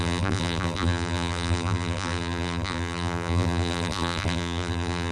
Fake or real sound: fake